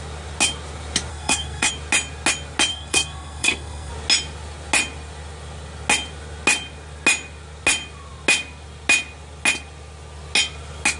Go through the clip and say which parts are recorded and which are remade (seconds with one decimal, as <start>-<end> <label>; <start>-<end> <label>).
0.0-1.1 recorded; 1.1-1.7 remade; 1.7-2.7 recorded; 2.7-3.9 remade; 3.9-11.0 recorded